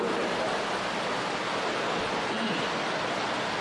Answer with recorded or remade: recorded